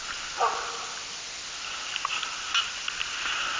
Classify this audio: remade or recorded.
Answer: recorded